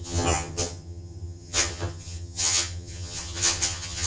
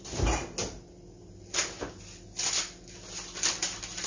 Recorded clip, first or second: second